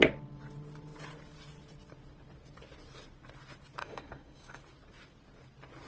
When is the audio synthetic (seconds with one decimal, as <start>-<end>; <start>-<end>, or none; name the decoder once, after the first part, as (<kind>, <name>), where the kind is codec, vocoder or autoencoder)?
3.8-4.6 (codec, DAC)